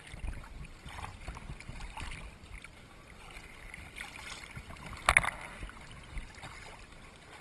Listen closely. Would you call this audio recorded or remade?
recorded